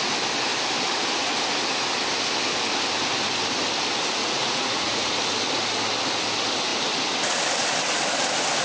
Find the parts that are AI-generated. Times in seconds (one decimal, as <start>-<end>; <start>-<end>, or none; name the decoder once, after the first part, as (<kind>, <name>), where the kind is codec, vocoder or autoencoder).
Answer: 4.2-5.1 (vocoder, Vocos)